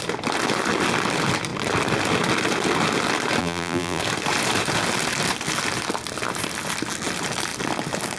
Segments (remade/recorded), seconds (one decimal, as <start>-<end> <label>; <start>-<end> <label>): 0.0-3.4 recorded; 3.4-4.0 remade; 4.0-8.2 recorded